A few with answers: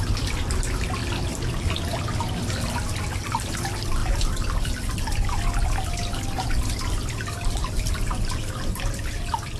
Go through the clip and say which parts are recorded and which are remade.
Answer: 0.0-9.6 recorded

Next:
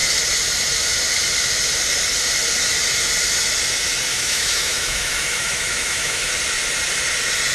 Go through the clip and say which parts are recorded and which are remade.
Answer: 0.0-4.1 recorded; 4.1-6.3 remade; 6.3-7.5 recorded

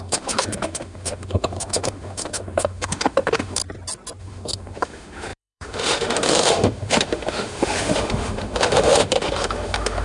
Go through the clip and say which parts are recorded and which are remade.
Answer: 0.0-3.6 remade; 3.6-4.2 recorded; 4.2-10.0 remade

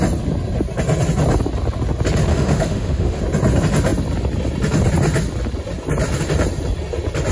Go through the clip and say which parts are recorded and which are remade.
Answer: 0.0-2.3 recorded; 2.3-3.2 remade; 3.2-7.3 recorded

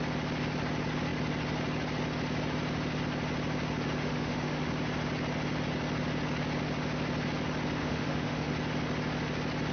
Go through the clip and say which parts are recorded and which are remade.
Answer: 0.0-4.0 recorded; 4.0-4.7 remade; 4.7-7.8 recorded; 7.8-8.5 remade; 8.5-9.7 recorded

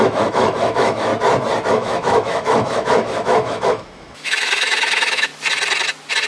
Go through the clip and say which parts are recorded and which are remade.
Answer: 0.0-1.1 remade; 1.1-1.7 recorded; 1.7-5.3 remade; 5.3-6.3 recorded

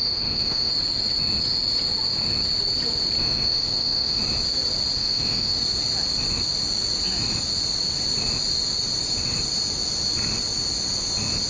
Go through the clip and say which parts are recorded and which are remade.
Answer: 0.0-0.7 remade; 0.7-3.2 recorded; 3.2-4.2 remade; 4.2-5.0 recorded; 5.0-5.6 remade; 5.6-11.5 recorded

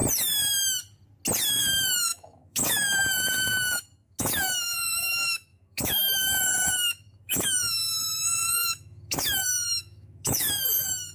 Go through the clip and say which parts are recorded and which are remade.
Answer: 0.0-1.6 recorded; 1.6-11.1 remade